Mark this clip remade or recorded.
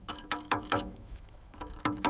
remade